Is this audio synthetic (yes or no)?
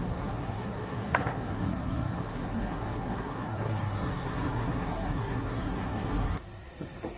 yes